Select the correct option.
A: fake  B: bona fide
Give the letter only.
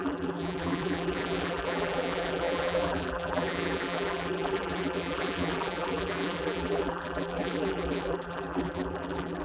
A